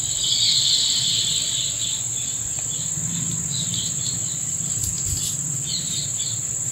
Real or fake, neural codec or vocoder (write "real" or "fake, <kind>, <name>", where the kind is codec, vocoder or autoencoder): fake, vocoder, BigVGAN v2